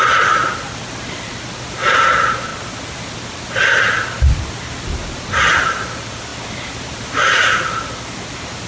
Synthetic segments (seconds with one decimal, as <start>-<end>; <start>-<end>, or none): 6.3-7.9